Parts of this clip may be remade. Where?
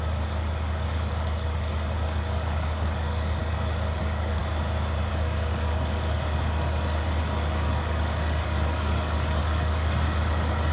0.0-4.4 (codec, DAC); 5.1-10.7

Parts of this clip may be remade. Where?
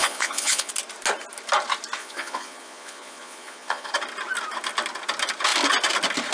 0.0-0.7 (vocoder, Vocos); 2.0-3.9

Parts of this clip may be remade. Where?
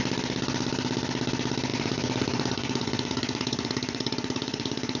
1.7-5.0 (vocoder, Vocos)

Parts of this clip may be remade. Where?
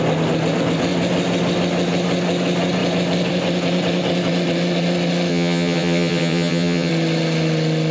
5.3-6.9 (vocoder, HiFi-GAN)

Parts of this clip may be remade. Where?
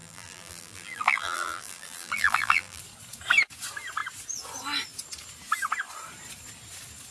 0.0-2.8 (vocoder, BigVGAN v2)